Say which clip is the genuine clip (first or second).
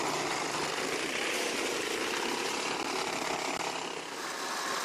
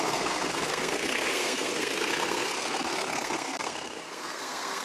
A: first